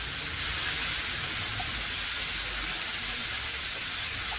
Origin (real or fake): real